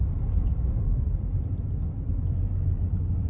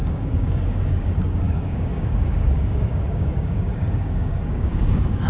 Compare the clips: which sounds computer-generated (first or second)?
second